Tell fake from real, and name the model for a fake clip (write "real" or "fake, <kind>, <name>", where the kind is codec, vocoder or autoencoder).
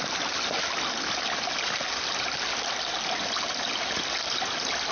real